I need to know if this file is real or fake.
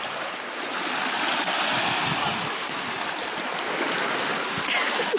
real